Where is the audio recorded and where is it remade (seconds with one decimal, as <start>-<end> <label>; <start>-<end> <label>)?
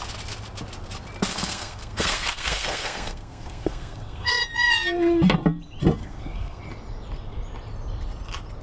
0.0-1.3 recorded; 1.3-4.3 remade; 4.3-6.0 recorded; 6.0-6.6 remade; 6.6-8.6 recorded